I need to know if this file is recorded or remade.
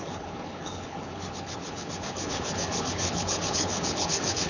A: remade